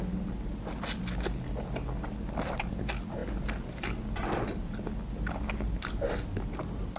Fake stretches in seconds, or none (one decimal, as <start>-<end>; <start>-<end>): none